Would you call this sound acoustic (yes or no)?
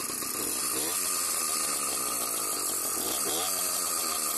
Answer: yes